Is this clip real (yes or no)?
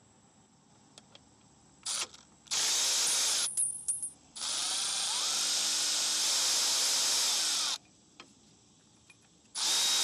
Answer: yes